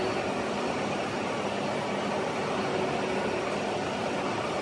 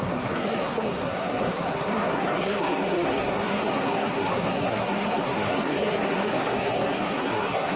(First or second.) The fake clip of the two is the second